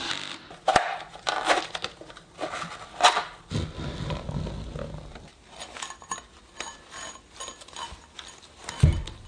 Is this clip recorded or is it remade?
recorded